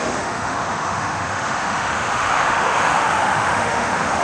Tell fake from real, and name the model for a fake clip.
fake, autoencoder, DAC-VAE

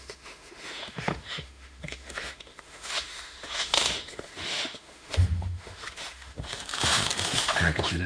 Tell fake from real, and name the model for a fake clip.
fake, autoencoder, DAC-VAE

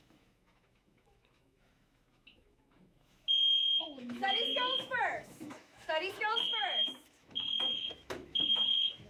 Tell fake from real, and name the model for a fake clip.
fake, autoencoder, DAC-VAE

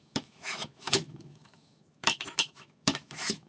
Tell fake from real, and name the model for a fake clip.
fake, autoencoder, DAC-VAE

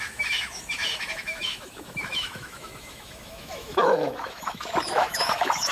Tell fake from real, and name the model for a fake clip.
fake, autoencoder, DAC-VAE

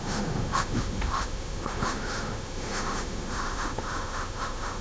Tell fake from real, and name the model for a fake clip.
fake, autoencoder, DAC-VAE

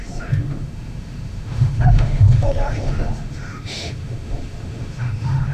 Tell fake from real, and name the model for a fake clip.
fake, autoencoder, DAC-VAE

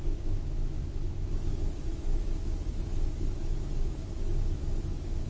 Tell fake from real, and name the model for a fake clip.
fake, autoencoder, DAC-VAE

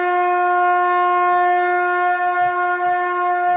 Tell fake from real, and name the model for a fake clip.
real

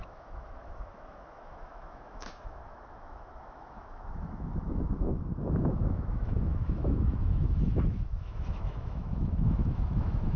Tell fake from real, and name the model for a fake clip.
fake, autoencoder, DAC-VAE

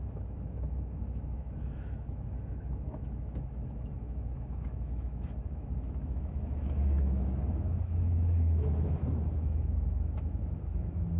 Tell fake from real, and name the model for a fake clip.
fake, autoencoder, DAC-VAE